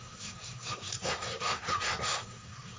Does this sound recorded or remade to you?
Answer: remade